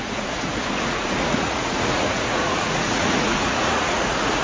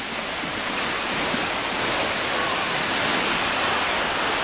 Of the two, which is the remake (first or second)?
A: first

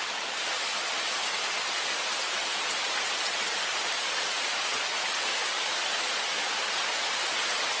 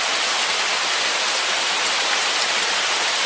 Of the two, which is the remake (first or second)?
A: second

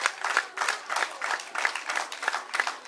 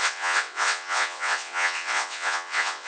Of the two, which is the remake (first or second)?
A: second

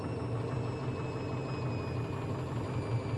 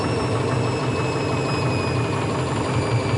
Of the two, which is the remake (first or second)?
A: second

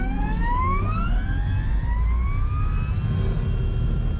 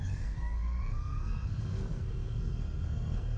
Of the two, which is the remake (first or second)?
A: second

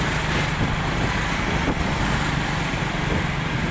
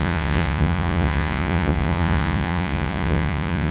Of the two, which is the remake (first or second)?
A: second